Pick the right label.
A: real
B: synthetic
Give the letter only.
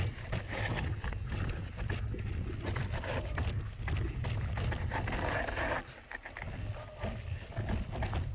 A